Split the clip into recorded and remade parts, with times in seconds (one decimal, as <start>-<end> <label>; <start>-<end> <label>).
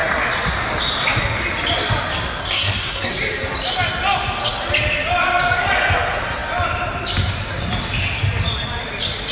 0.0-2.4 recorded; 2.4-3.1 remade; 3.1-9.3 recorded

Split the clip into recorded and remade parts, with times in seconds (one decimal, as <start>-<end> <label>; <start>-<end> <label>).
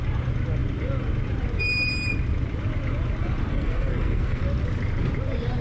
0.0-3.5 recorded; 3.5-4.4 remade; 4.4-5.6 recorded